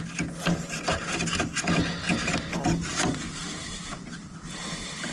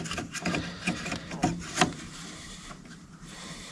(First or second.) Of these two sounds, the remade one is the second